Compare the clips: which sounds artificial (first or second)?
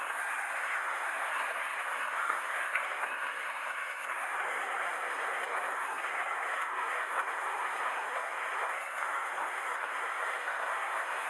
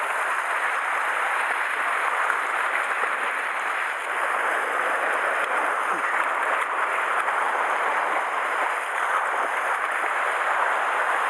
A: first